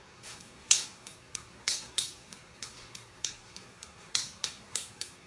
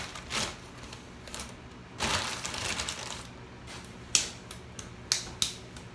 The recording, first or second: second